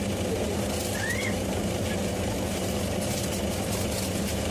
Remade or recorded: remade